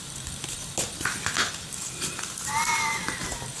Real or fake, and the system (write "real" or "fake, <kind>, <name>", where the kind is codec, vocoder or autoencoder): real